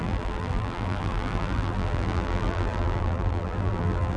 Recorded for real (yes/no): no